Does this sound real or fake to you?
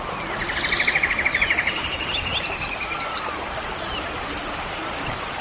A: real